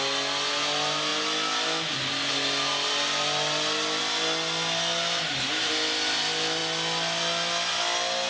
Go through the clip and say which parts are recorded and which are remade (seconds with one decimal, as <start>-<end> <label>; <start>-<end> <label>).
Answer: 0.0-8.3 recorded